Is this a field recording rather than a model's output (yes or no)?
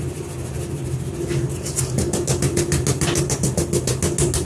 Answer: yes